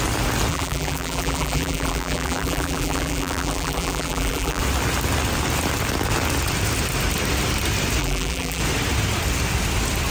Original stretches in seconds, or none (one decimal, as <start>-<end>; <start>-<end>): 0.0-0.5; 4.6-8.0; 8.6-10.1